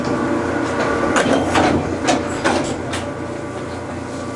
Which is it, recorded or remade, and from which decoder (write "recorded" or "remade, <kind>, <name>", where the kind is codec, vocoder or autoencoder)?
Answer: recorded